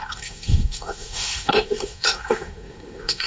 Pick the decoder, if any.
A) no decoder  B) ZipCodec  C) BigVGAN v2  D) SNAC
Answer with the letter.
D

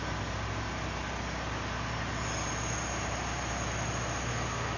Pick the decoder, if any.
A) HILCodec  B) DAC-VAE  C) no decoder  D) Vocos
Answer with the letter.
C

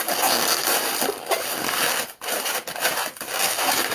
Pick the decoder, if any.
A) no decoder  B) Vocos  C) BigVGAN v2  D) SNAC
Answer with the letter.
C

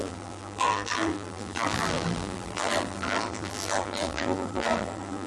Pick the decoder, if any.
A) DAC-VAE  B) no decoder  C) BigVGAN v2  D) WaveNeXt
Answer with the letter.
C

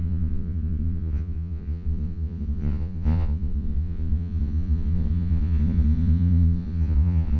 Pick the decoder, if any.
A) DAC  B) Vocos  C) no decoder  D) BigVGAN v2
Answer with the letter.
B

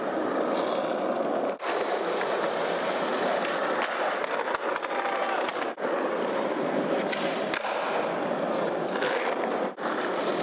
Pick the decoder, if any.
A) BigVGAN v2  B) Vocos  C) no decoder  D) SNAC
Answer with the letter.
C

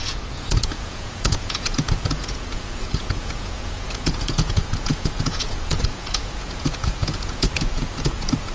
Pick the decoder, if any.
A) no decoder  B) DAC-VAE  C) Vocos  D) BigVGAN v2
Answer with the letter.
C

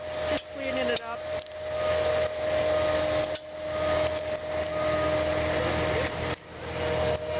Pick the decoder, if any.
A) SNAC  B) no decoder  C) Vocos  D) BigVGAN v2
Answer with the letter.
B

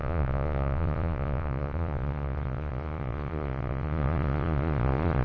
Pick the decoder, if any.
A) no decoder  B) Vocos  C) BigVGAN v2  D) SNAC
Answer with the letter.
B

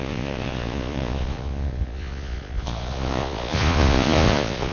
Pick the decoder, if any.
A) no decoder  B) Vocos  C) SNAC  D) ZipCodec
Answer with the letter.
B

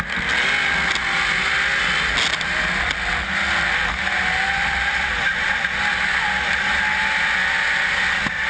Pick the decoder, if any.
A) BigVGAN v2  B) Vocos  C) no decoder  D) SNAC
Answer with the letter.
C